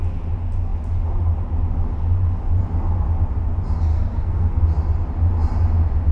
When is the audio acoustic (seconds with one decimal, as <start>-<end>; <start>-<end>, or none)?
0.0-3.9; 4.6-6.1